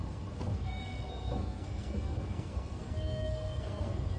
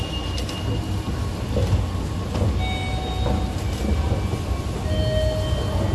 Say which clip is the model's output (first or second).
first